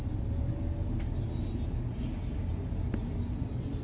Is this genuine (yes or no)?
yes